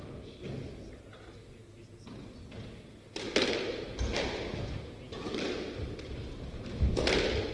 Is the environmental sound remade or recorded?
recorded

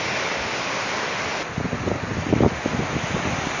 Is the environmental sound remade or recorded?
recorded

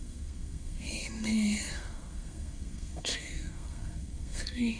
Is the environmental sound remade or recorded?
remade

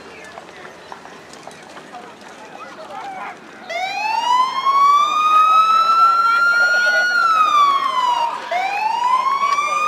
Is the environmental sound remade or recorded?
recorded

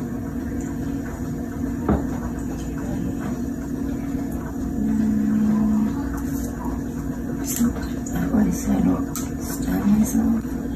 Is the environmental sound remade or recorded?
recorded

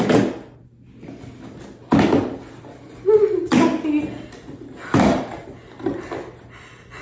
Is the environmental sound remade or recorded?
recorded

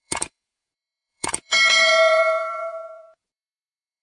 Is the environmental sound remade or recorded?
remade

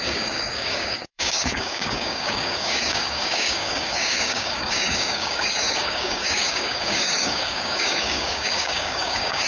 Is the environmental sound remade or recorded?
remade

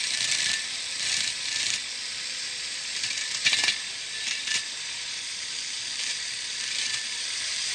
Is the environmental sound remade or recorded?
remade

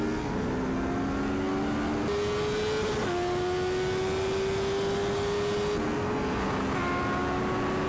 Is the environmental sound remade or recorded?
recorded